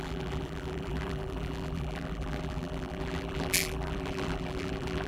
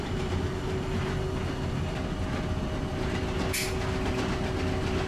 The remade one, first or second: first